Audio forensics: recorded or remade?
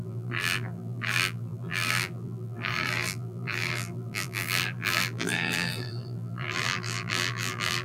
remade